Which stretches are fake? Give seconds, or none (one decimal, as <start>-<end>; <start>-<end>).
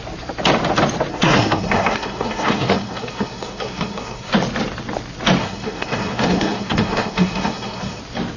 1.1-4.3; 5.4-8.0